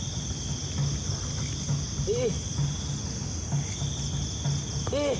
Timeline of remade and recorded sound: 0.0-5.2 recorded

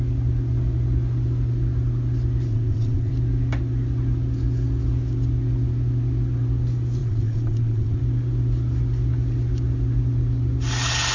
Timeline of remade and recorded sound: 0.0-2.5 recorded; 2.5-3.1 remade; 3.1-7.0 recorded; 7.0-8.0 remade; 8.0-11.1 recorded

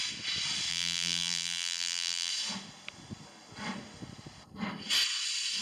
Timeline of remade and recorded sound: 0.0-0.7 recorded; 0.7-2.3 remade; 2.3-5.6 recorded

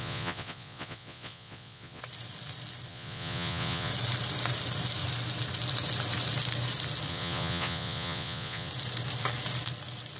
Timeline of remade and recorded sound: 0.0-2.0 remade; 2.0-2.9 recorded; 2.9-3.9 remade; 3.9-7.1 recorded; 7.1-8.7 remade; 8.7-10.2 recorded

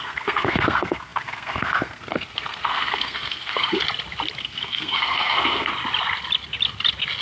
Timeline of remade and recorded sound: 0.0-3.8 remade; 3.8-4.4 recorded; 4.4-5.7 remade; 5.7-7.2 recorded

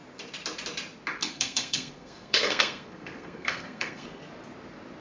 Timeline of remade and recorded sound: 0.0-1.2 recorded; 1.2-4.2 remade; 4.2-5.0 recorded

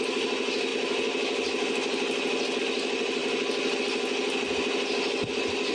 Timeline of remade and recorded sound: 0.0-5.7 recorded